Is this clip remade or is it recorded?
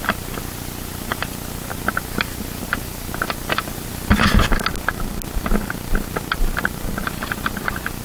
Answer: recorded